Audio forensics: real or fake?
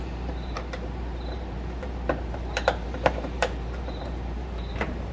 fake